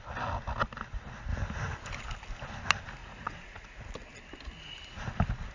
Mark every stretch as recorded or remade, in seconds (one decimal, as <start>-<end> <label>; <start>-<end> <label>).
0.0-3.0 recorded; 3.0-3.8 remade; 3.8-5.5 recorded